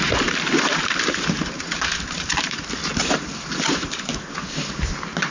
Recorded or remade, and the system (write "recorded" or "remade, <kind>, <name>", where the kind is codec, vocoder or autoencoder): remade, vocoder, BigVGAN v2